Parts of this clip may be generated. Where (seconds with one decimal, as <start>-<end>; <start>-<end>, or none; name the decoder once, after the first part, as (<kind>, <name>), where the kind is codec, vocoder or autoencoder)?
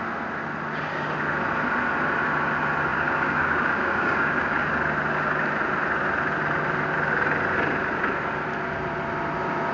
2.9-4.7 (codec, DAC)